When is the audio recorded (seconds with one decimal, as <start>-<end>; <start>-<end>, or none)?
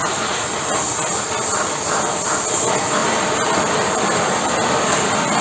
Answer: 0.0-3.0; 4.4-5.4